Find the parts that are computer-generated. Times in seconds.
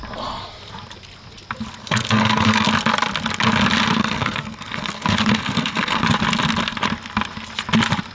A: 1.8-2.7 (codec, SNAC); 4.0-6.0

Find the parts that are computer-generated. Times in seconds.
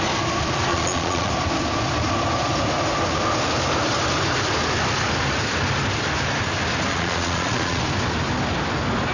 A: 0.7-1.3 (vocoder, Vocos); 6.9-7.8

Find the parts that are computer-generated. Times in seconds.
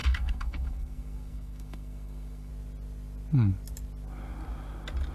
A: 0.0-2.5 (codec, SNAC)